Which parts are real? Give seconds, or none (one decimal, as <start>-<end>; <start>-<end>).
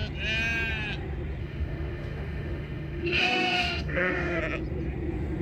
0.0-1.4; 4.4-5.4